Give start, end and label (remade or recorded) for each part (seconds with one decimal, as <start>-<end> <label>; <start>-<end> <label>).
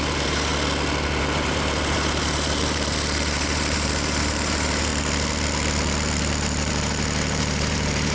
0.0-0.5 remade; 0.5-1.2 recorded; 1.2-4.9 remade; 4.9-6.4 recorded; 6.4-8.1 remade